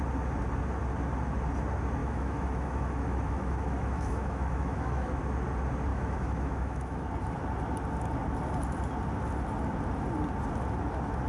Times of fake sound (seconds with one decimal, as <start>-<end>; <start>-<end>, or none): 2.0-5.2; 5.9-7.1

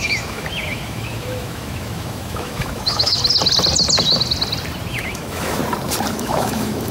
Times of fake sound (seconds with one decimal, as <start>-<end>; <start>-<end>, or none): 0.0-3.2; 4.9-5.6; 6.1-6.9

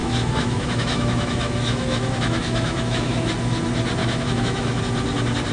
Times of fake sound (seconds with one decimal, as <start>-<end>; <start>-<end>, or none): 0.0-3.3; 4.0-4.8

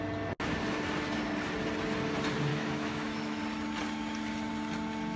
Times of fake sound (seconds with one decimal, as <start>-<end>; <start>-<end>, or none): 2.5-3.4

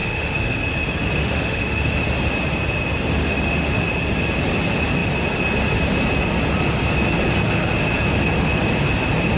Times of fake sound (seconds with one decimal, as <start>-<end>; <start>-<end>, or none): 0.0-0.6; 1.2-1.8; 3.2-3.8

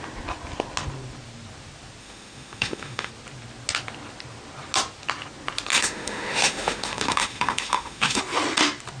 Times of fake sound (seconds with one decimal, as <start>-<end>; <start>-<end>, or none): 2.0-3.1; 5.7-8.2